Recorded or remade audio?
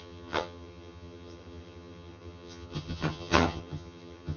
remade